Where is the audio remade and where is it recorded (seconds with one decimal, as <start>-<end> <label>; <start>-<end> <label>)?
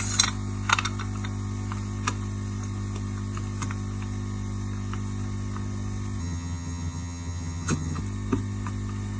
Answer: 0.0-6.2 recorded; 6.2-8.0 remade; 8.0-9.2 recorded